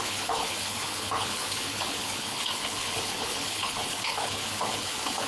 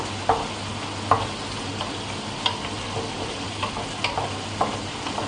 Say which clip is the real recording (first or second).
second